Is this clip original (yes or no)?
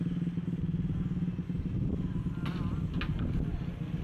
yes